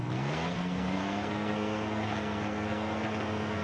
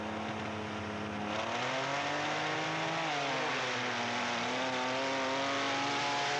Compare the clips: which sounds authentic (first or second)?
second